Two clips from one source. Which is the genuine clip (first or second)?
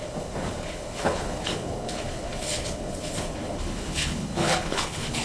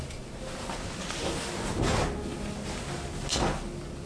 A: second